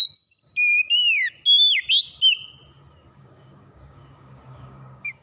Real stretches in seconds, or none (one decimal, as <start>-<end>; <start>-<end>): 0.0-3.1